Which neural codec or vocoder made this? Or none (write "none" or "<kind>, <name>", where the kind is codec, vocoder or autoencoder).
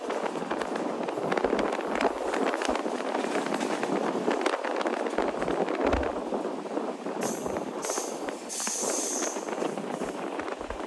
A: none